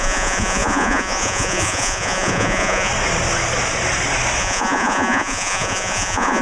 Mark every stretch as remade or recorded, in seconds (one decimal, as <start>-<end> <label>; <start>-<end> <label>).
0.0-2.9 remade; 2.9-4.4 recorded; 4.4-6.4 remade